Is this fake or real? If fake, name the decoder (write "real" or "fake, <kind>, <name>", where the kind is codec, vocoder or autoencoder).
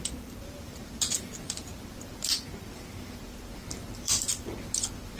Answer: fake, vocoder, BigVGAN v2